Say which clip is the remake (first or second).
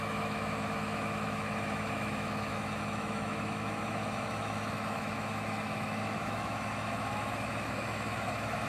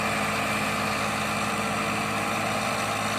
first